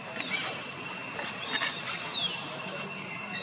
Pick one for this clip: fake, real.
real